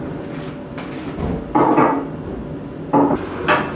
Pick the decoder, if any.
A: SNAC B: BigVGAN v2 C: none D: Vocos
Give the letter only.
C